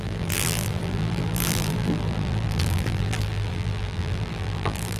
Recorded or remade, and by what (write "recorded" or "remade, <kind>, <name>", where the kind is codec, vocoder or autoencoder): remade, vocoder, BigVGAN v2